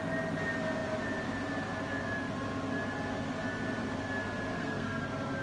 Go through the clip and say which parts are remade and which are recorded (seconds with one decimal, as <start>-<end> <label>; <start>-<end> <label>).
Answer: 0.0-4.5 recorded; 4.5-5.0 remade; 5.0-5.4 recorded